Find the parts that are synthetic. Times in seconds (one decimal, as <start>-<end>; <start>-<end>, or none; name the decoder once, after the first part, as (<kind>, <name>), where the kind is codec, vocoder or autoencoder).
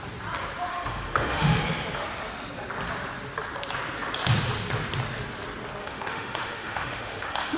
0.7-1.6 (autoencoder, DAC-VAE); 5.8-7.6